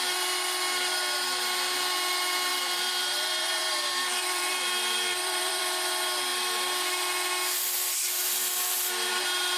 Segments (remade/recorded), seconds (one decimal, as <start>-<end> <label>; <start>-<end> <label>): 0.0-2.5 recorded; 2.5-5.6 remade; 5.6-9.6 recorded

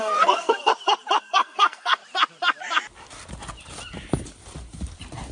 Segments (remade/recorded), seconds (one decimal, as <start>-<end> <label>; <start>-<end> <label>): 0.0-0.7 remade; 0.7-1.2 recorded; 1.2-2.0 remade; 2.0-5.3 recorded

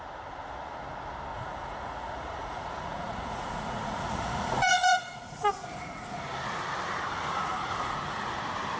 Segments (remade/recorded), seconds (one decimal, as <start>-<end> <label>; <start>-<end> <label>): 0.0-1.3 recorded; 1.3-6.2 remade; 6.2-7.4 recorded; 7.4-8.4 remade; 8.4-8.8 recorded

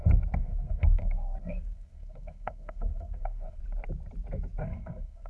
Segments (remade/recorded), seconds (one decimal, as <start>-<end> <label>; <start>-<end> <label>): 0.0-0.4 recorded; 0.4-3.6 remade; 3.6-4.6 recorded; 4.6-5.3 remade

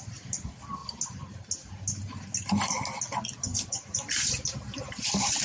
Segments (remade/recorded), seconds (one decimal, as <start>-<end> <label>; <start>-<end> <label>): 0.0-3.5 recorded; 3.5-4.3 remade; 4.3-5.4 recorded

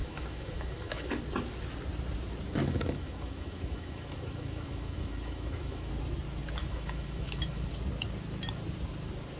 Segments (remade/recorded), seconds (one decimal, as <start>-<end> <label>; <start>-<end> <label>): 0.0-1.2 remade; 1.2-2.6 recorded; 2.6-5.9 remade; 5.9-6.6 recorded; 6.6-7.7 remade; 7.7-9.4 recorded

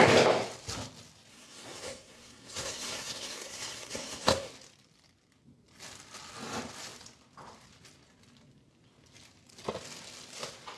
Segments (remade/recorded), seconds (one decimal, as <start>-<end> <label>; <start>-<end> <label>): 0.0-1.3 recorded; 1.3-4.5 remade; 4.5-10.8 recorded